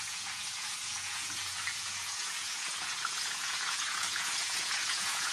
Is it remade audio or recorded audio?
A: remade